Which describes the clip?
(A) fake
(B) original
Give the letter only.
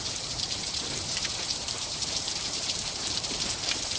A